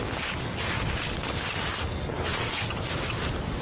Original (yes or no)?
yes